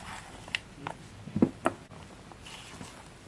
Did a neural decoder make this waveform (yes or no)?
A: no